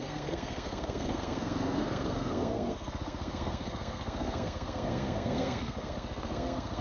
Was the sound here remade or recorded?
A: remade